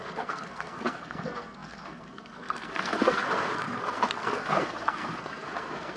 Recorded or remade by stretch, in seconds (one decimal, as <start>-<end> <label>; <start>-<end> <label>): 0.0-6.0 remade